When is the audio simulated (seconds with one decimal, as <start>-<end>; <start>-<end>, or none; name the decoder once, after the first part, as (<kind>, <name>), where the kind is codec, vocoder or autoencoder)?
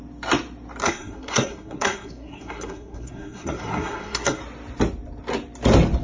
0.8-4.4 (codec, SNAC)